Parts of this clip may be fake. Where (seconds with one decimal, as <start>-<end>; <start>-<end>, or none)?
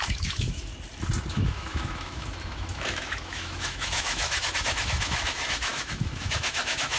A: 0.0-0.7; 1.3-7.0